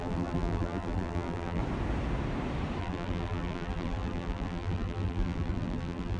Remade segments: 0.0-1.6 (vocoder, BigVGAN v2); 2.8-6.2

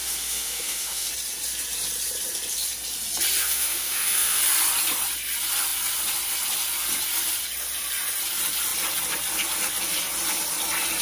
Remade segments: 0.0-1.1 (autoencoder, DAC-VAE); 3.4-4.4